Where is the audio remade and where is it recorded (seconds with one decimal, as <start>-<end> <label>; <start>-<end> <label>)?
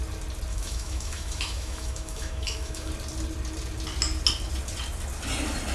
0.0-0.5 recorded; 0.5-2.9 remade; 2.9-5.7 recorded